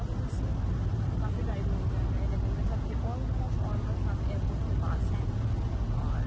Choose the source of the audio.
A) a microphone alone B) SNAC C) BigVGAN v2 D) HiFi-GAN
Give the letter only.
A